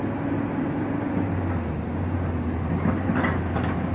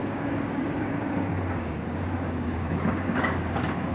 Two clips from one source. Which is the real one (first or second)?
first